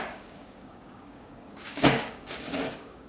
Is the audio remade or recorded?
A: remade